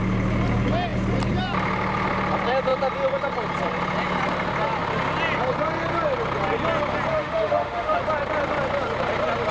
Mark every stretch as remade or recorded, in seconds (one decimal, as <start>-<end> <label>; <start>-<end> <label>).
0.0-7.1 recorded; 7.1-8.0 remade; 8.0-9.5 recorded